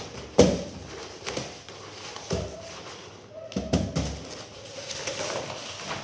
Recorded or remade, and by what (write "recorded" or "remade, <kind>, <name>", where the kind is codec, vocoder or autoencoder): recorded